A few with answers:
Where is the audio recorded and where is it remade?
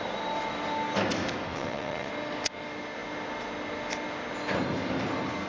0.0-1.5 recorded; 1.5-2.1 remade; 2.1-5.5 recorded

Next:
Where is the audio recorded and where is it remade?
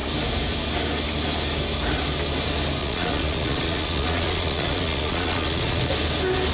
0.0-2.8 recorded; 2.8-5.9 remade; 5.9-6.5 recorded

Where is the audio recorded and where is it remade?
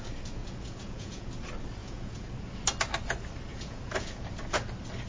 0.0-0.4 recorded; 0.4-1.3 remade; 1.3-1.8 recorded; 1.8-2.3 remade; 2.3-3.5 recorded; 3.5-4.4 remade; 4.4-5.1 recorded